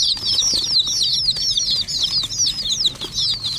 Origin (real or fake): real